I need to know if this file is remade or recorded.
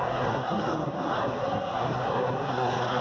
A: remade